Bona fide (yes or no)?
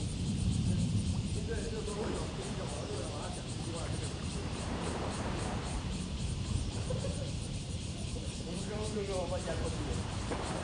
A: no